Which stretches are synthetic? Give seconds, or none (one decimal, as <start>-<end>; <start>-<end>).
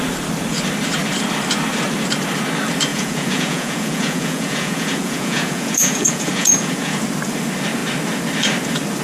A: 2.9-7.0